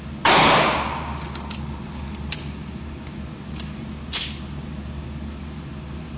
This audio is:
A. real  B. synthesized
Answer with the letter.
A